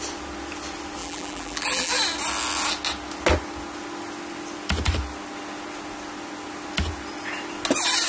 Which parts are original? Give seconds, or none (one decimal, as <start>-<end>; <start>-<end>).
0.0-1.0; 1.9-8.1